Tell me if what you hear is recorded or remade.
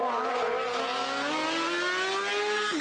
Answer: recorded